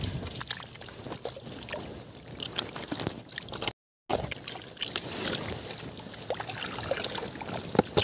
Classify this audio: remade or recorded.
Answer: recorded